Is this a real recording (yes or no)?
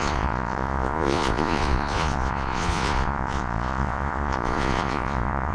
no